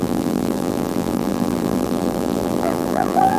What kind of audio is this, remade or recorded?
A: remade